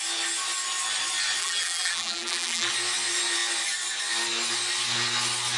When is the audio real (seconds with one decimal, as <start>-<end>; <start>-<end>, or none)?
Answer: 0.0-1.4; 2.7-5.6